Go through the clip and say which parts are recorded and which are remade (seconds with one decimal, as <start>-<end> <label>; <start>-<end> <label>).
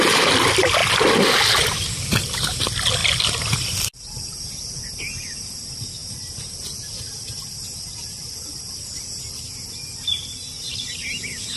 0.0-11.6 recorded